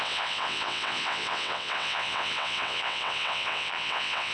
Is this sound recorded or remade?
remade